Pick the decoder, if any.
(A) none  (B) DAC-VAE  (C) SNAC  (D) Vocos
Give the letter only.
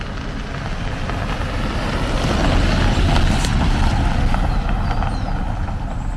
A